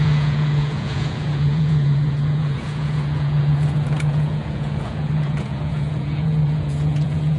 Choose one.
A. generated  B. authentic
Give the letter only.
A